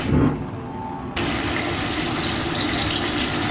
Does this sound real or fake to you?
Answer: real